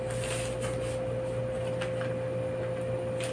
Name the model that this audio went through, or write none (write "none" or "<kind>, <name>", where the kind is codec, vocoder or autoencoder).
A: none